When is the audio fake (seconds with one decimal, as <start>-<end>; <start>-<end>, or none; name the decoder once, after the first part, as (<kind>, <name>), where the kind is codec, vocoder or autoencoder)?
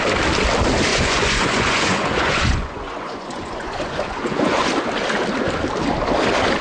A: 0.9-4.7 (vocoder, Vocos)